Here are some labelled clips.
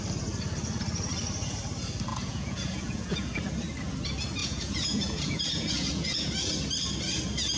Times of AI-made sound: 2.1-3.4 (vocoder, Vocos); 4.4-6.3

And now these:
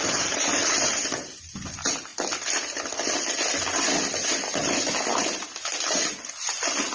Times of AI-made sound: none

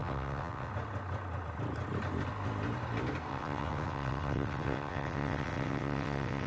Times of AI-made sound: 0.0-0.7 (vocoder, WaveNeXt); 3.3-6.5

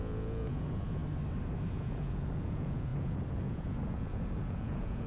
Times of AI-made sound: 0.0-1.0 (vocoder, Vocos); 1.7-5.1

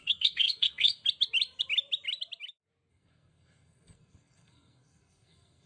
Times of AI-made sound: 0.0-1.0 (codec, SNAC); 2.9-5.7